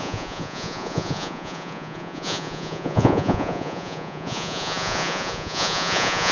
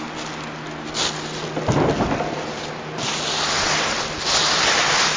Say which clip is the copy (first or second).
first